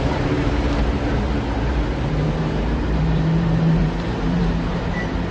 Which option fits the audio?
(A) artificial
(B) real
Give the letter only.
A